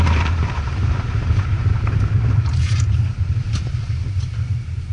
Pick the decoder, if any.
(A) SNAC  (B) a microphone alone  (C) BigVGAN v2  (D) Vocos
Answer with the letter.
C